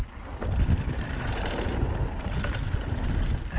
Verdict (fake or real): real